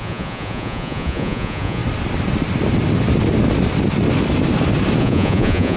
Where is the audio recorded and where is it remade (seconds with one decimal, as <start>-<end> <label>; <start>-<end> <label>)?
0.0-1.8 remade; 1.8-5.0 recorded; 5.0-5.8 remade